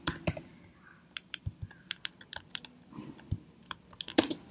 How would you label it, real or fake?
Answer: fake